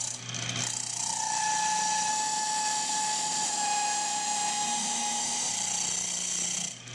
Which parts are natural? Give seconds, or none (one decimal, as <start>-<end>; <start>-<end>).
0.0-2.1; 5.5-6.9